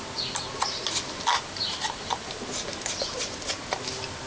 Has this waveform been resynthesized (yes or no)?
no